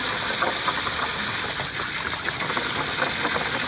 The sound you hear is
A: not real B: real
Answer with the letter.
B